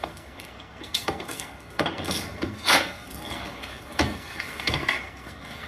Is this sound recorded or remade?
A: remade